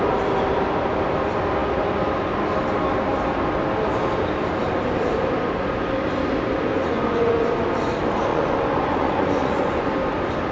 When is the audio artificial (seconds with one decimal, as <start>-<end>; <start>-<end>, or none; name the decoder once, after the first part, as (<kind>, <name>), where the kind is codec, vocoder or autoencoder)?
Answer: 6.7-7.3 (vocoder, Vocos); 8.3-9.9